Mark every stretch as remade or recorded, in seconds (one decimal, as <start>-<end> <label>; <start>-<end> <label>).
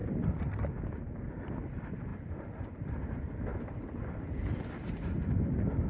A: 0.0-0.6 remade; 0.6-2.1 recorded; 2.1-5.9 remade